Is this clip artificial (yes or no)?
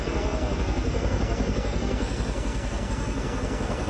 yes